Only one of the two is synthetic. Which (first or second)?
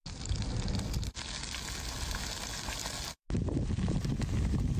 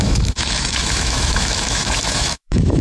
second